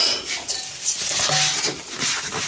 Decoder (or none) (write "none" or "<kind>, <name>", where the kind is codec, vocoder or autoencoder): none